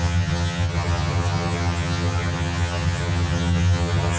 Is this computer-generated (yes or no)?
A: yes